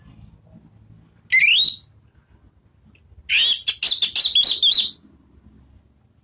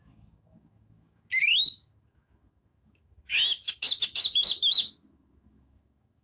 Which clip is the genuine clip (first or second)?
first